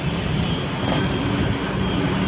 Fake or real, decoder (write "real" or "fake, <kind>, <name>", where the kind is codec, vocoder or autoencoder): real